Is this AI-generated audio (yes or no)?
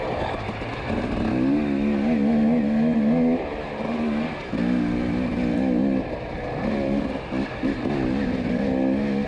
no